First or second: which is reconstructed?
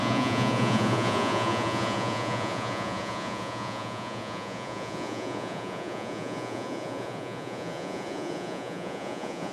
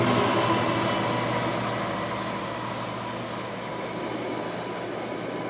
first